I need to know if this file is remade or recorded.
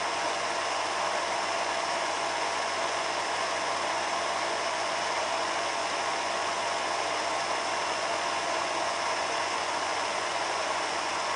remade